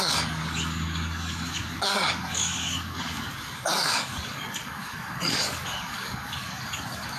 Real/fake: fake